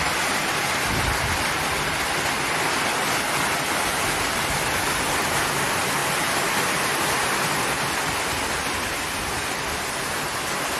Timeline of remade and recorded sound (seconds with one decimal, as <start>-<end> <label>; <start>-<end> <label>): 0.0-10.8 recorded